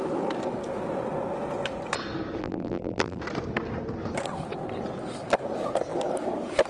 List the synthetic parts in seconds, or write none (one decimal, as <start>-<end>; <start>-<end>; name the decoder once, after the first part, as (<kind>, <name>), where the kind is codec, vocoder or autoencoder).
2.4-3.2 (vocoder, BigVGAN v2)